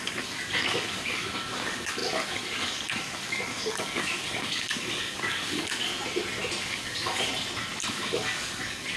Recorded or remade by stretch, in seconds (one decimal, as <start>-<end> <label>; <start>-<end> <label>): 0.0-5.9 remade; 5.9-6.6 recorded; 6.6-7.3 remade; 7.3-7.9 recorded; 7.9-9.0 remade